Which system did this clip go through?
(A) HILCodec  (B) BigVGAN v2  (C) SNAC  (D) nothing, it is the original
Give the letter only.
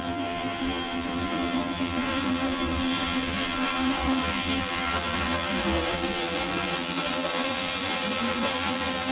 B